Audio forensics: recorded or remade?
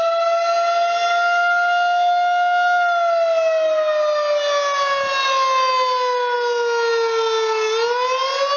recorded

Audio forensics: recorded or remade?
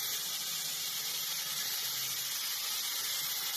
recorded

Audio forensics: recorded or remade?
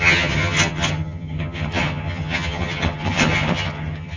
remade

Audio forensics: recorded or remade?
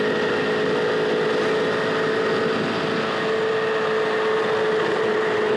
recorded